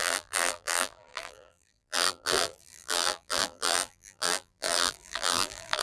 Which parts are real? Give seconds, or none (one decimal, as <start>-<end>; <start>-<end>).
none